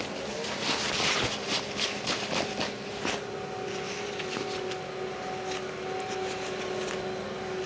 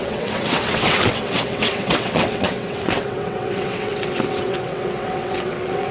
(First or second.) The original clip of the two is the first